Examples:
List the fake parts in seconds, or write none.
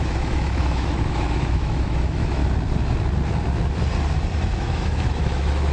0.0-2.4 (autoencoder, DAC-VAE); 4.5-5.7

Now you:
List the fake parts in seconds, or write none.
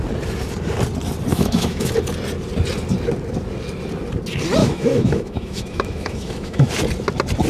1.3-1.9 (autoencoder, DAC-VAE); 4.6-6.7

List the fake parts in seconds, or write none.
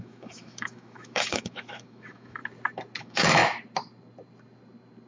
0.0-2.4 (autoencoder, DAC-VAE); 3.0-3.4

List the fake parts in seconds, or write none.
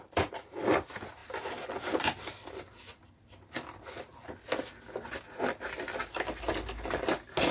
none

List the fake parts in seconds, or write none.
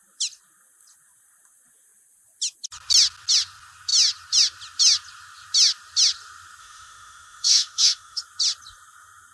6.6-8.2 (autoencoder, DAC-VAE)